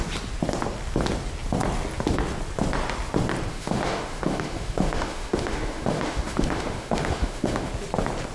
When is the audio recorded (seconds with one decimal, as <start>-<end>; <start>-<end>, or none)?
0.0-3.5; 7.7-8.3

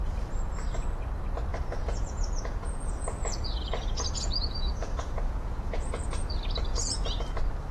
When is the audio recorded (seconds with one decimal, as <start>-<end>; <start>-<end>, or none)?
0.0-1.5; 6.1-6.7; 7.2-7.7

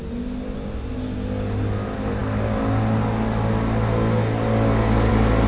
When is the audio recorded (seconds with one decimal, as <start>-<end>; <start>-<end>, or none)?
0.0-5.5

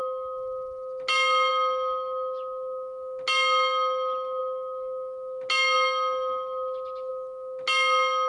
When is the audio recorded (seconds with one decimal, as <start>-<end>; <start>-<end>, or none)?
0.0-8.3

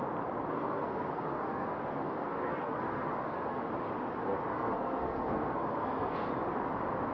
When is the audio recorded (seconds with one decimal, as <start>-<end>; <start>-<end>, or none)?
0.0-0.5; 3.7-4.5; 6.3-7.1